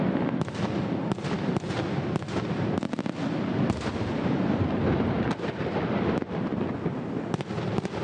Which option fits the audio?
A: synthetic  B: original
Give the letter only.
B